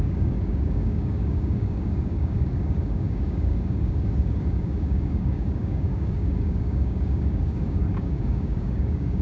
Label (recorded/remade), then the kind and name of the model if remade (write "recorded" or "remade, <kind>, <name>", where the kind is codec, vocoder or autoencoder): remade, codec, DAC